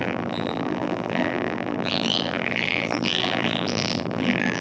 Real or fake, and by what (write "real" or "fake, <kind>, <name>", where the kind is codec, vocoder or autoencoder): fake, vocoder, BigVGAN v2